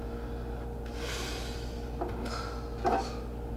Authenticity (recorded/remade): recorded